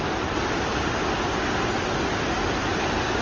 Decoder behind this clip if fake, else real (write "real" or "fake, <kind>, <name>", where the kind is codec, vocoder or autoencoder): real